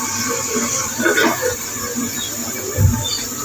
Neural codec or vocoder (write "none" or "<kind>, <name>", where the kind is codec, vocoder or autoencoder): none